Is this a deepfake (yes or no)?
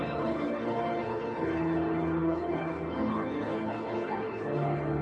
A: yes